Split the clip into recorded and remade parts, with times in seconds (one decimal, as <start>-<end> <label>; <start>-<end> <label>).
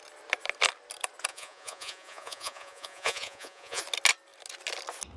0.0-1.3 recorded; 1.3-3.8 remade; 3.8-5.2 recorded